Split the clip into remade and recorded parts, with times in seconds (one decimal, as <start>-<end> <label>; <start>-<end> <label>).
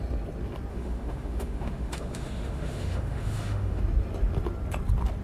0.0-0.7 recorded; 0.7-3.8 remade; 3.8-5.2 recorded